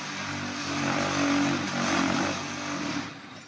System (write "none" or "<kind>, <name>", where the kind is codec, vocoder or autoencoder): none